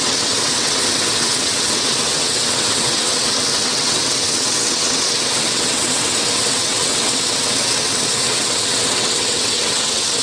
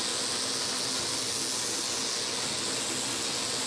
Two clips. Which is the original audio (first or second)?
second